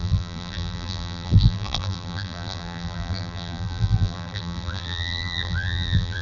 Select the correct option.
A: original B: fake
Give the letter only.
B